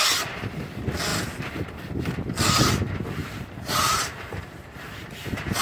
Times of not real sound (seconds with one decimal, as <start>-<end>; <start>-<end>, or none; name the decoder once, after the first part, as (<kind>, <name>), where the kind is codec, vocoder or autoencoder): 3.2-5.6 (vocoder, BigVGAN v2)